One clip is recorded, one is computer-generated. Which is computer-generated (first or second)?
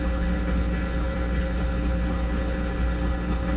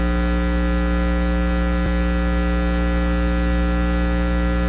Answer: first